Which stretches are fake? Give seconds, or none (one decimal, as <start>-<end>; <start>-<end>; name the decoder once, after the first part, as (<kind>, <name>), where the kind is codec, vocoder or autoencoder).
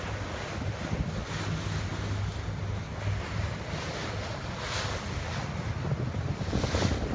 none